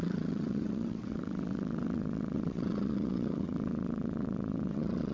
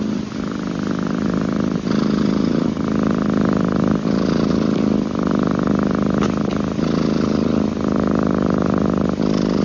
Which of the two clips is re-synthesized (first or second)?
first